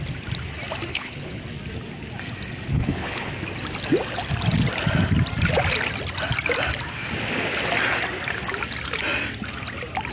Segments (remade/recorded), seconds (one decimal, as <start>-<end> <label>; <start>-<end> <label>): 0.0-0.9 recorded; 0.9-1.4 remade; 1.4-2.7 recorded; 2.7-3.3 remade; 3.3-10.1 recorded